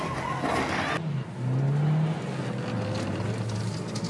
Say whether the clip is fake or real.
real